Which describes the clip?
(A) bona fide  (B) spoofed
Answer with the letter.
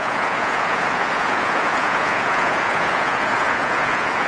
B